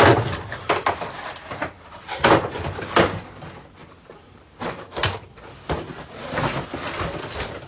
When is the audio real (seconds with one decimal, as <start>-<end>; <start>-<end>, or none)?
0.0-1.2; 2.8-3.8; 5.3-7.7